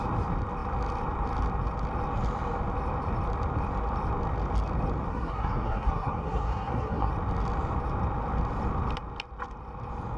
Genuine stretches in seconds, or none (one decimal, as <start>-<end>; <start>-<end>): 0.0-5.1; 7.1-10.2